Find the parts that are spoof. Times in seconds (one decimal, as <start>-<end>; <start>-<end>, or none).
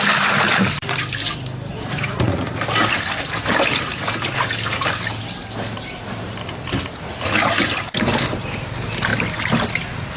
1.7-2.6